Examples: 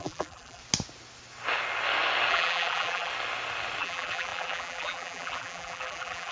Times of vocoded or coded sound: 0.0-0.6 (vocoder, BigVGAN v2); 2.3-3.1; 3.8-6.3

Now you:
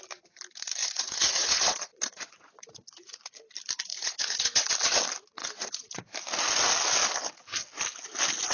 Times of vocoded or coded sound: 0.8-3.3 (vocoder, Vocos); 3.9-4.7; 5.4-6.1